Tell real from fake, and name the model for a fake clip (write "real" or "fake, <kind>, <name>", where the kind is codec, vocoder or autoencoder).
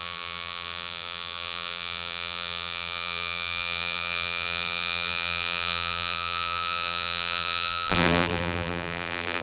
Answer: fake, vocoder, BigVGAN v2